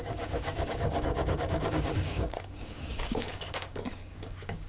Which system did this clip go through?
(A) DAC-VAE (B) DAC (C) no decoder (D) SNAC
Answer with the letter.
B